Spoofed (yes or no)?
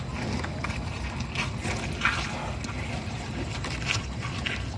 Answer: no